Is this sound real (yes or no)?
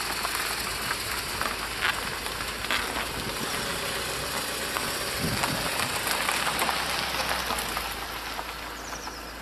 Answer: yes